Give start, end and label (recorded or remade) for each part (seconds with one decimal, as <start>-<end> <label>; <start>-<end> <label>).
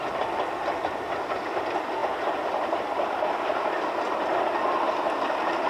0.0-5.7 recorded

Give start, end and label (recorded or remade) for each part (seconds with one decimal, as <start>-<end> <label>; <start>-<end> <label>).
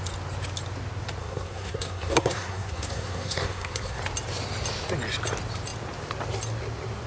0.0-1.2 recorded; 1.2-4.0 remade; 4.0-7.1 recorded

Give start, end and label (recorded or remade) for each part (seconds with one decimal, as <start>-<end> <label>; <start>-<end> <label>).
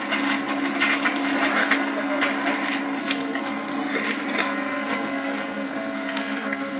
0.0-1.6 recorded; 1.6-2.2 remade; 2.2-3.0 recorded; 3.0-3.7 remade; 3.7-4.4 recorded; 4.4-6.8 remade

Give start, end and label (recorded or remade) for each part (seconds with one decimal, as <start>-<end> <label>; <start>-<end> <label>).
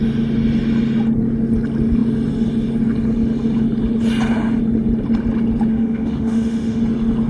0.0-5.7 recorded; 5.7-6.8 remade; 6.8-7.3 recorded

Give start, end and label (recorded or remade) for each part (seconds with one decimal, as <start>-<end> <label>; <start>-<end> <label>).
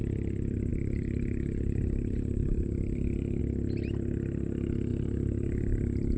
0.0-0.7 recorded; 0.7-3.4 remade; 3.4-4.9 recorded; 4.9-6.2 remade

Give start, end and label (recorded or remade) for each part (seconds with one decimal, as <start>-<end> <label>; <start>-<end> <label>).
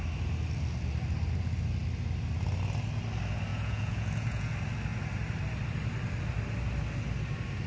0.0-3.5 recorded; 3.5-4.5 remade; 4.5-7.7 recorded